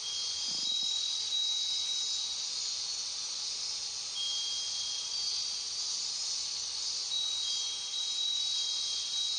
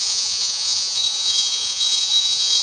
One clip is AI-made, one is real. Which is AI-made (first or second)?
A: second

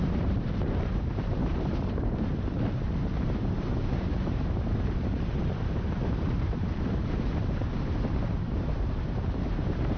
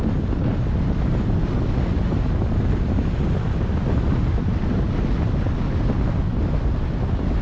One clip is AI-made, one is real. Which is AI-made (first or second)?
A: first